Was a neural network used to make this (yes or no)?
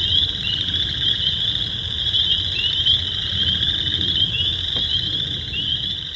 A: no